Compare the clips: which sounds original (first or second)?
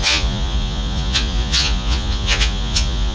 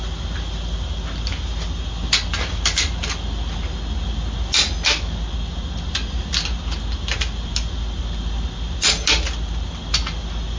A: second